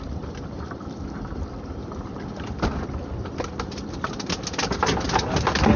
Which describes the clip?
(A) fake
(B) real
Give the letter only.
B